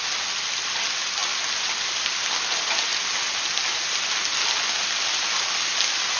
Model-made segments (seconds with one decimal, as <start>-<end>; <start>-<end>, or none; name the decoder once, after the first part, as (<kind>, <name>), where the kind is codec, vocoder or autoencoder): none